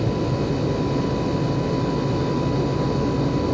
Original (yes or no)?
yes